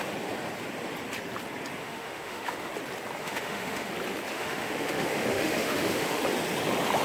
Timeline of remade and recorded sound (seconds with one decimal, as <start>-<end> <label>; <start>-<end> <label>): 0.0-1.8 recorded; 1.8-2.7 remade; 2.7-3.2 recorded; 3.2-3.9 remade; 3.9-4.3 recorded; 4.3-6.2 remade; 6.2-7.0 recorded